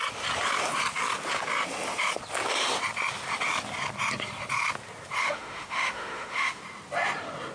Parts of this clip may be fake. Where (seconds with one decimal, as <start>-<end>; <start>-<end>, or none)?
5.2-6.6